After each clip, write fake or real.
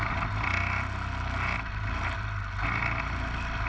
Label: real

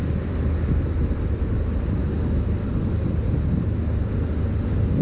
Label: real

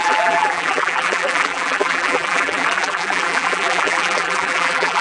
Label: fake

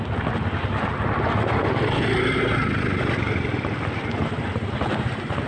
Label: real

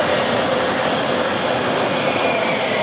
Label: real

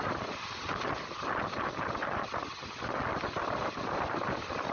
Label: real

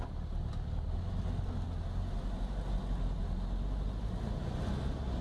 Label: real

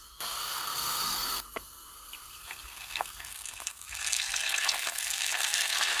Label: fake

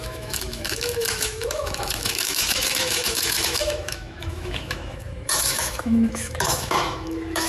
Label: fake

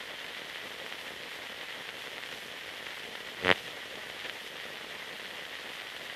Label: real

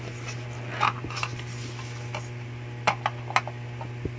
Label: real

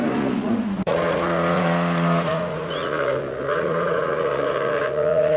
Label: fake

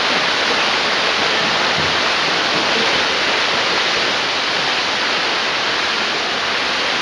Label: real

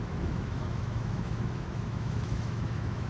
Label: fake